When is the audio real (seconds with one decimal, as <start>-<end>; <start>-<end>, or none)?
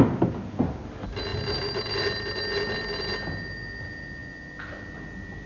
0.0-5.5